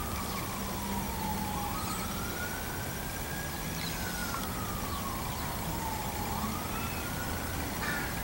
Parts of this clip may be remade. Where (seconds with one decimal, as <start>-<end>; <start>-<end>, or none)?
none